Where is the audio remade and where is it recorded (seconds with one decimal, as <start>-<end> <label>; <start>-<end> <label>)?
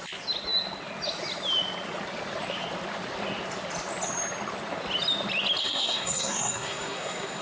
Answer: 0.0-5.6 recorded; 5.6-7.4 remade